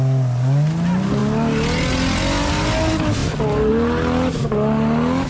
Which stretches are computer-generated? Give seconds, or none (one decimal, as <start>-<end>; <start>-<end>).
none